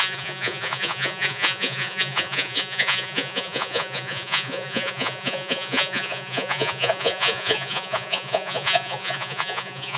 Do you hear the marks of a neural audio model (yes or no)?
yes